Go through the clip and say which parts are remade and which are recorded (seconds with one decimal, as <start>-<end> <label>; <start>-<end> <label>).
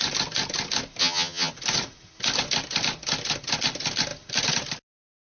0.0-1.0 recorded; 1.0-1.5 remade; 1.5-5.3 recorded